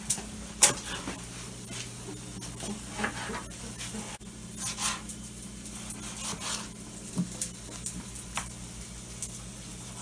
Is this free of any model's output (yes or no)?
yes